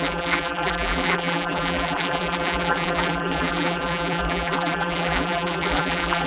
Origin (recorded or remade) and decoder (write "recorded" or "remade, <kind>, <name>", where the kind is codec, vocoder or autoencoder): remade, vocoder, BigVGAN v2